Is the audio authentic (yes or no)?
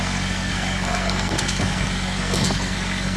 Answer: no